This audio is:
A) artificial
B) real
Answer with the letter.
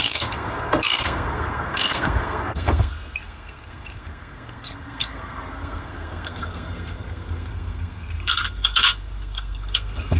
A